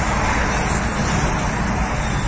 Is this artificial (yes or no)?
no